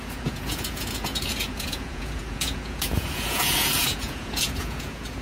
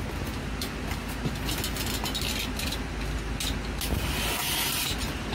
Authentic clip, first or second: second